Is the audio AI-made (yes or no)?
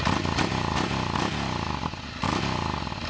no